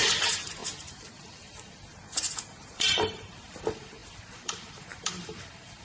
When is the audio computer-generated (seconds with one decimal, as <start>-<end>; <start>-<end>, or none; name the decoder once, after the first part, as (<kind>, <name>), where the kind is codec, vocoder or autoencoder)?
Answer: 0.0-5.8 (vocoder, BigVGAN v2)